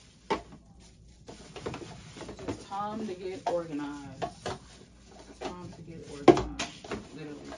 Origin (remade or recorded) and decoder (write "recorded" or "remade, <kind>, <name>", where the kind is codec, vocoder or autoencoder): recorded